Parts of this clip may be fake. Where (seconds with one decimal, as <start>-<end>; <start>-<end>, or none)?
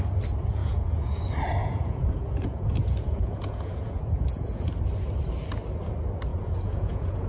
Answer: 0.6-1.2; 1.6-4.7; 6.3-7.3